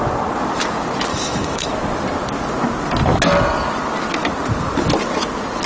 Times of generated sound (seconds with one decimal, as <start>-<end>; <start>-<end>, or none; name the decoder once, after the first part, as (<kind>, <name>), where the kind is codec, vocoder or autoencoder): 1.1-1.7 (autoencoder, DAC-VAE)

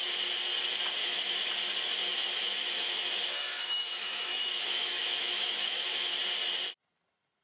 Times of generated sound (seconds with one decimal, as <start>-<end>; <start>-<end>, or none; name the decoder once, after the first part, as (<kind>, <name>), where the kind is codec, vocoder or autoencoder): 1.0-1.5 (autoencoder, DAC-VAE); 2.1-6.1

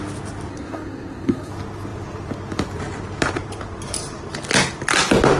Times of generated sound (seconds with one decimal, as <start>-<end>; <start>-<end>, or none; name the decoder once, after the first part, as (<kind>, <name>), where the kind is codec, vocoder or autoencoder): 0.5-1.5 (codec, SNAC)

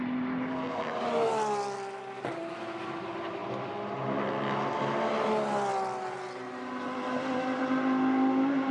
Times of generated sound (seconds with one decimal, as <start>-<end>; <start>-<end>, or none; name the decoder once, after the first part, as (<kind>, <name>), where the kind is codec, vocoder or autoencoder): none

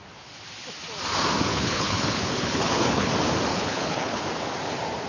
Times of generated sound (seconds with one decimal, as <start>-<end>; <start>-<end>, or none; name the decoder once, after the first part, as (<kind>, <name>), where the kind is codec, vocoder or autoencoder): 1.5-3.1 (codec, HILCodec); 3.5-4.2

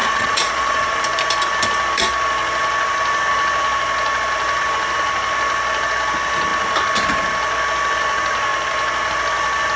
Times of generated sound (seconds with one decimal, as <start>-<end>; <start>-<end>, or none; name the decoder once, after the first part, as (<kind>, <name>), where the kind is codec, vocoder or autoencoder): 0.0-1.0 (vocoder, Vocos)

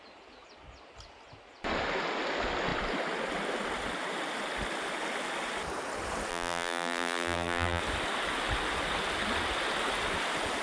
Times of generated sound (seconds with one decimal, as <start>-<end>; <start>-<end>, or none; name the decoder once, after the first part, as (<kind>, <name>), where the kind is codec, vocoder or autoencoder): 6.3-7.8 (vocoder, BigVGAN v2)

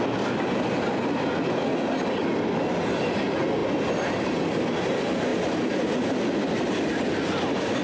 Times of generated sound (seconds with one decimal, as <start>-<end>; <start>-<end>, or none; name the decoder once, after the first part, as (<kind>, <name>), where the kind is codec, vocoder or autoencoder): none